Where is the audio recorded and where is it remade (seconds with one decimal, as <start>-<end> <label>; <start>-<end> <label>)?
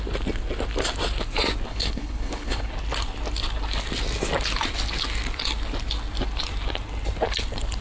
0.0-1.7 recorded; 1.7-2.7 remade; 2.7-7.8 recorded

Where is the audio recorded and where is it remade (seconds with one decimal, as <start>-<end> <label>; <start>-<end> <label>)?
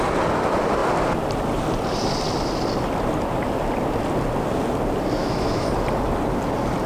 0.0-5.2 recorded; 5.2-5.7 remade; 5.7-6.9 recorded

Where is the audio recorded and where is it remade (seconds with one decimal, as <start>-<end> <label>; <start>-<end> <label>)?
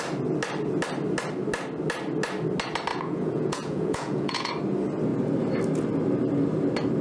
0.0-2.9 recorded; 2.9-4.5 remade; 4.5-7.0 recorded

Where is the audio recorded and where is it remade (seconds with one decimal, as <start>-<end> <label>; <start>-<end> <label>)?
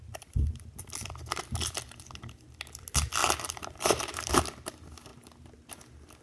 0.0-3.2 recorded; 3.2-4.4 remade; 4.4-6.2 recorded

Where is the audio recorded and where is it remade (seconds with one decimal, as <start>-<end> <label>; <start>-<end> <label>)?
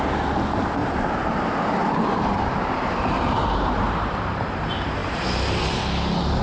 0.0-0.8 recorded; 0.8-4.6 remade; 4.6-5.0 recorded; 5.0-5.6 remade; 5.6-6.4 recorded